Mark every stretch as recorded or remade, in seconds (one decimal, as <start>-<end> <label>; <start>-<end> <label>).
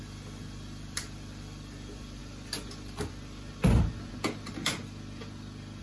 0.0-2.2 remade; 2.2-5.8 recorded